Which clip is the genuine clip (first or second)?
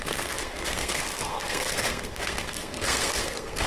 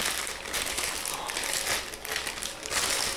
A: second